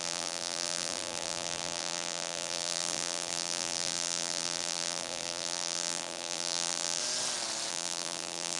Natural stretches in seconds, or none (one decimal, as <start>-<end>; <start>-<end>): 7.0-7.7